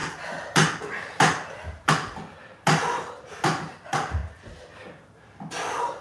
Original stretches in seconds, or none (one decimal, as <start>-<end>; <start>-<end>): 0.0-6.0